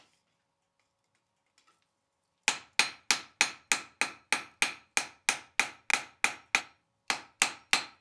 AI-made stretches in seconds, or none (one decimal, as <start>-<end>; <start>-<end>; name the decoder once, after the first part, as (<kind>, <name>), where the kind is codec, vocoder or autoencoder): none